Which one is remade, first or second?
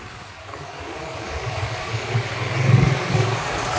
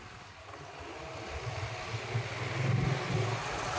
first